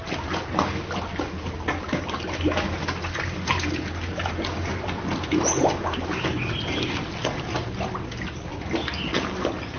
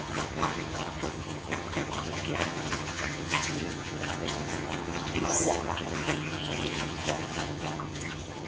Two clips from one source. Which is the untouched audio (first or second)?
first